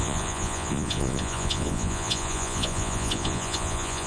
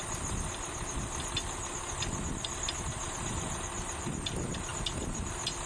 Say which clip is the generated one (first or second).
first